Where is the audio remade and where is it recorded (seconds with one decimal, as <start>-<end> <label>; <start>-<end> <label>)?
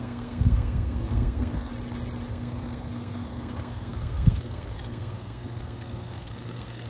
0.0-1.7 remade; 1.7-2.3 recorded; 2.3-6.9 remade